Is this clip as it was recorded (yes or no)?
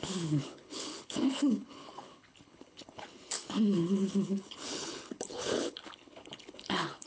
no